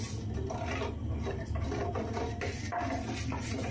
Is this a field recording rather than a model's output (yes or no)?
yes